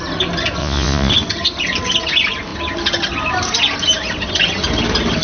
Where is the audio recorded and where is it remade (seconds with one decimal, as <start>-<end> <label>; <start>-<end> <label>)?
0.0-0.6 recorded; 0.6-1.1 remade; 1.1-5.2 recorded